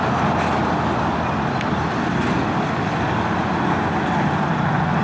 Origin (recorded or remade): recorded